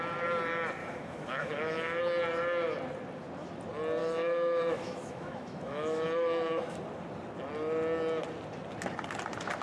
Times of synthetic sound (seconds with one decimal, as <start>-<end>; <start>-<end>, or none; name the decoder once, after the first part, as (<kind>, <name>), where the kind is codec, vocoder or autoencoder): 0.8-2.0 (autoencoder, DAC-VAE); 4.0-6.8